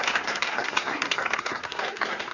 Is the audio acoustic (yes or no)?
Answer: no